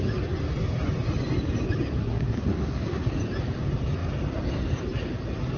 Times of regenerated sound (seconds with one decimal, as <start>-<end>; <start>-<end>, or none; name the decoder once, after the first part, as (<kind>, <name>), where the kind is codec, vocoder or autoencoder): 2.0-3.1 (codec, SNAC)